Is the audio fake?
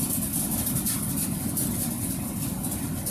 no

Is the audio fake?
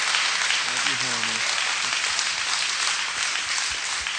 no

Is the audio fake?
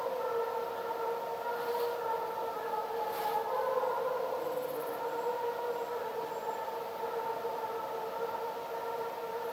no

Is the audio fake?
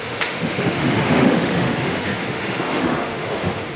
yes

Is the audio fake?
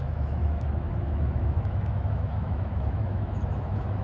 yes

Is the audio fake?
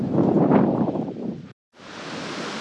no